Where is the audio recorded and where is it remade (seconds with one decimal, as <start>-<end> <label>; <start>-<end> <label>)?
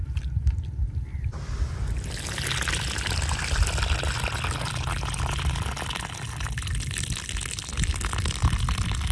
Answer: 0.0-9.1 recorded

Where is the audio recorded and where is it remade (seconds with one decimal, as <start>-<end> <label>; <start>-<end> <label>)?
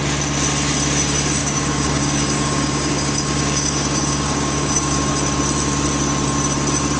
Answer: 0.0-1.4 recorded; 1.4-5.1 remade; 5.1-7.0 recorded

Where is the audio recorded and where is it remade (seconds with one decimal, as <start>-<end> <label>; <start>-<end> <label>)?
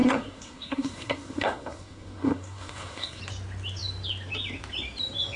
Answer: 0.0-3.2 remade; 3.2-5.4 recorded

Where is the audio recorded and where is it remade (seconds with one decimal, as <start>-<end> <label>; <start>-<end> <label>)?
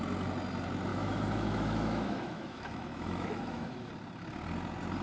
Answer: 0.0-0.9 recorded; 0.9-3.9 remade; 3.9-5.0 recorded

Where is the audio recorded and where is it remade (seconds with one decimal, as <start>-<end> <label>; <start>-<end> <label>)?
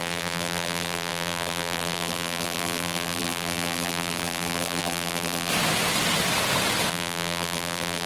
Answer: 0.0-5.5 remade; 5.5-6.9 recorded; 6.9-8.1 remade